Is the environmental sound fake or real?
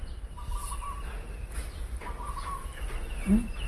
real